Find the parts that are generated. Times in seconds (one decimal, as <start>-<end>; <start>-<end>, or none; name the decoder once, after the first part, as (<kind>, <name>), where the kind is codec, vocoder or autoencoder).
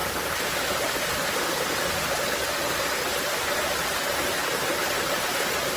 none